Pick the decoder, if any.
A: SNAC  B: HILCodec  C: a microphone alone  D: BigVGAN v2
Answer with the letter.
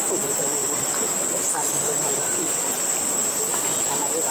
D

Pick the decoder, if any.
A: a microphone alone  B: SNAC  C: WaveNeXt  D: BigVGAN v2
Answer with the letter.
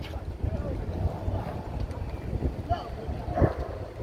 A